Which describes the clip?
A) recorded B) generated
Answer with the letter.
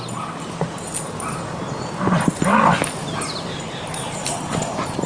A